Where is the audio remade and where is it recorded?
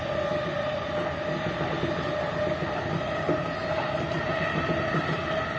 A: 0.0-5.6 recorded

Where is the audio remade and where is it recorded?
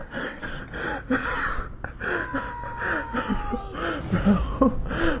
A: 0.0-0.6 remade; 0.6-5.2 recorded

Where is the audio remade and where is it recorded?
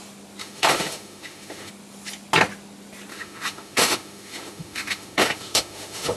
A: 0.0-0.4 recorded; 0.4-1.7 remade; 1.7-3.1 recorded; 3.1-6.2 remade